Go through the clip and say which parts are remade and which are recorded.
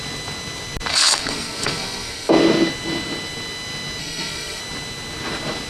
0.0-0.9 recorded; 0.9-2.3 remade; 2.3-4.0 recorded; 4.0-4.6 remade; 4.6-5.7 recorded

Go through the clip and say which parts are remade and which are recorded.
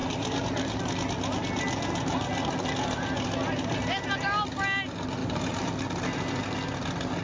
0.0-0.8 remade; 0.8-5.2 recorded; 5.2-5.7 remade; 5.7-7.2 recorded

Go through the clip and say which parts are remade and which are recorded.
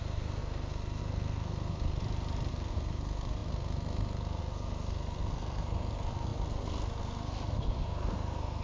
0.0-2.0 remade; 2.0-2.5 recorded; 2.5-8.6 remade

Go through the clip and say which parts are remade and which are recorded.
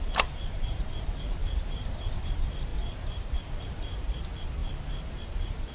0.0-4.6 remade; 4.6-5.3 recorded; 5.3-5.7 remade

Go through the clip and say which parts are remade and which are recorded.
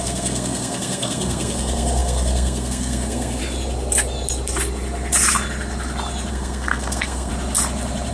0.0-3.4 remade; 3.4-6.3 recorded; 6.3-7.3 remade; 7.3-8.1 recorded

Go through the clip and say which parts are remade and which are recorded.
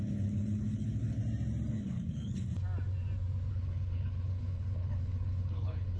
0.0-1.2 remade; 1.2-1.7 recorded; 1.7-2.5 remade; 2.5-3.5 recorded; 3.5-6.0 remade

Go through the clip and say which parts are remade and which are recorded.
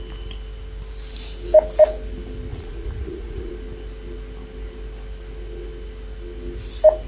0.0-2.5 recorded; 2.5-3.5 remade; 3.5-7.1 recorded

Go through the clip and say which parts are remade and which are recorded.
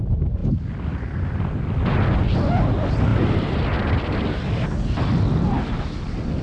0.0-0.4 recorded; 0.4-1.6 remade; 1.6-3.1 recorded; 3.1-4.3 remade; 4.3-6.4 recorded